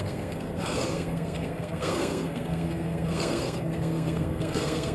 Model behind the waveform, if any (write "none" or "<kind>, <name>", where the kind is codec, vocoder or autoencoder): codec, SNAC